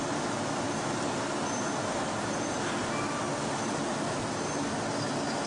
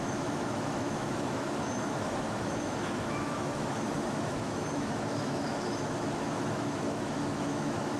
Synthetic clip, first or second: second